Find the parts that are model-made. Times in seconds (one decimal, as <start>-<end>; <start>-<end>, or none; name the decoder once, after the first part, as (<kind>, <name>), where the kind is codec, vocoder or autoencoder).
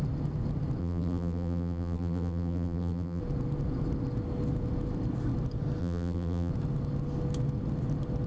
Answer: 0.8-3.2 (vocoder, BigVGAN v2); 5.8-6.5